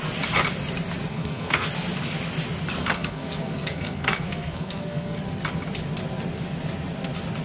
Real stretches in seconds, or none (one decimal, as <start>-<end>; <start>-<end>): 0.0-1.1; 1.7-2.8; 5.2-7.4